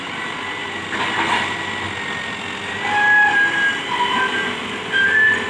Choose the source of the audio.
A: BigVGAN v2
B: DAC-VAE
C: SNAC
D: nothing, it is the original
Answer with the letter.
D